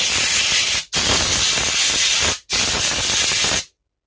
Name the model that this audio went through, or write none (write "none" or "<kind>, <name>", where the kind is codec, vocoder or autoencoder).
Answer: none